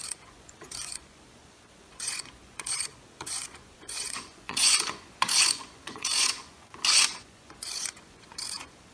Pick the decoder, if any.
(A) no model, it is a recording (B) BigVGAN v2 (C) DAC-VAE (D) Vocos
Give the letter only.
D